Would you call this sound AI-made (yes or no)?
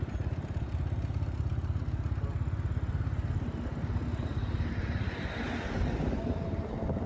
no